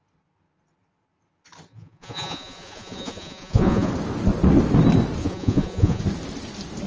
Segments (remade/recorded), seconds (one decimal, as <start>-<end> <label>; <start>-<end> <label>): 0.0-1.7 recorded; 1.7-3.9 remade; 3.9-5.2 recorded; 5.2-6.0 remade; 6.0-6.9 recorded